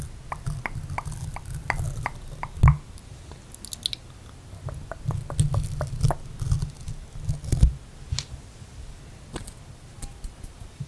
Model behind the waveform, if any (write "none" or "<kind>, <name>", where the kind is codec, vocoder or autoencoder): none